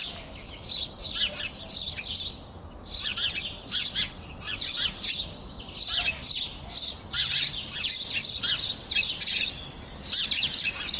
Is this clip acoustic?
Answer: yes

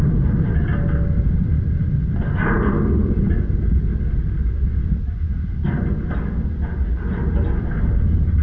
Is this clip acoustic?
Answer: yes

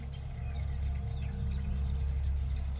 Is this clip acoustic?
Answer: yes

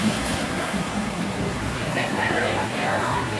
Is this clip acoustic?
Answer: no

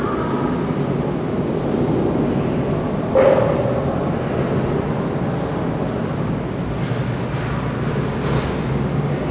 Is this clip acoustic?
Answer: yes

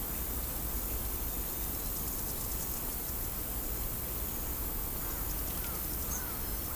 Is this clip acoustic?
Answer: yes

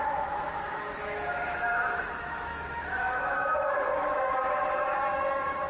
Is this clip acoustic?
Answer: no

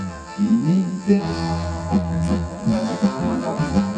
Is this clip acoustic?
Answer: no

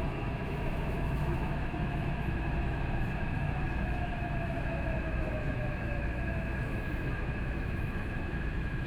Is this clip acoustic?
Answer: no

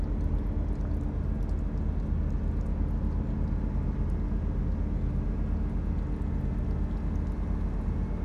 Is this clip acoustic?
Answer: yes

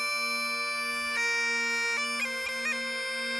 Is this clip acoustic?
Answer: yes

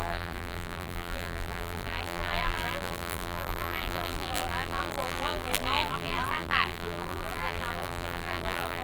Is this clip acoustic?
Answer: no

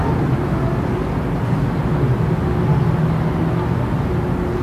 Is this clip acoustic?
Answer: yes